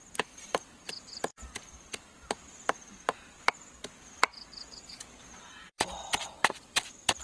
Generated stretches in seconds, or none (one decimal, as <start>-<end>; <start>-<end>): 0.0-0.9; 1.3-3.5; 5.6-6.3